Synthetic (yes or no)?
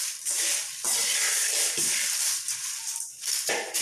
yes